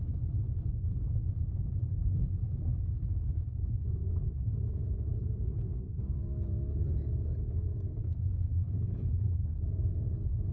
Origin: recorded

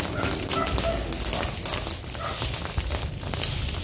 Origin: recorded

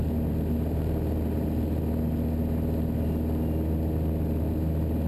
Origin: recorded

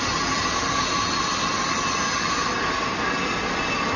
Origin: recorded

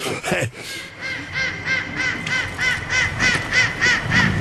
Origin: recorded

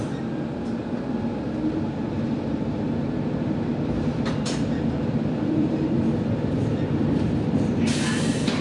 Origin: remade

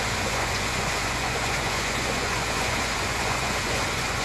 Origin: remade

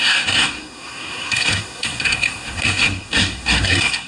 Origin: remade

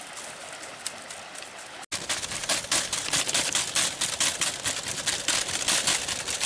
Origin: recorded